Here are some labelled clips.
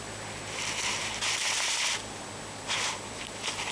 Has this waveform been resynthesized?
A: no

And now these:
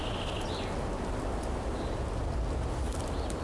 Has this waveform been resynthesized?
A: no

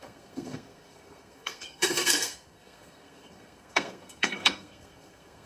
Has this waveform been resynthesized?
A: yes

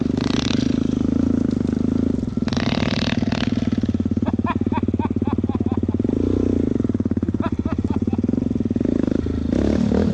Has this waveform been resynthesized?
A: no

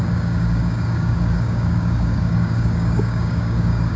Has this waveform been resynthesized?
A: yes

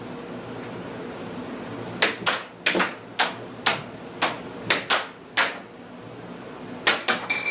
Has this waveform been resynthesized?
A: no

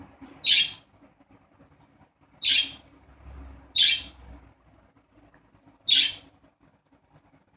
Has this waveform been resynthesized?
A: no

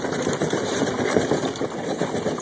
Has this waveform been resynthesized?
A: no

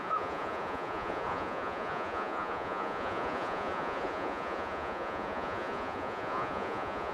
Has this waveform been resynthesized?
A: yes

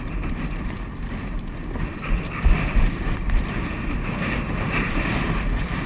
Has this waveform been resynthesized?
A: yes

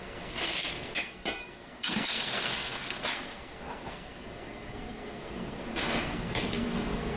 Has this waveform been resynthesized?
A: yes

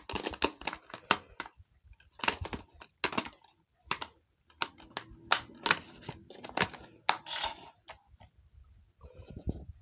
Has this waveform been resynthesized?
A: no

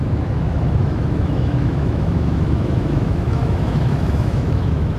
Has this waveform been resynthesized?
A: yes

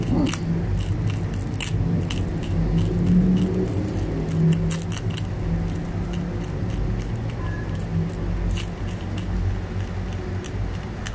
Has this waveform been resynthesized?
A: no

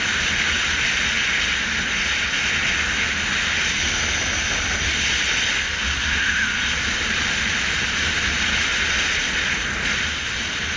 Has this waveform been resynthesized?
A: no